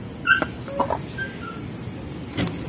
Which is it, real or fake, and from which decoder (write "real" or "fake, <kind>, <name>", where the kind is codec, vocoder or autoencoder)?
real